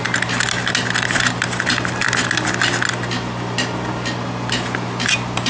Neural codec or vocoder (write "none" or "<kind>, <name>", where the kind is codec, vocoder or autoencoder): none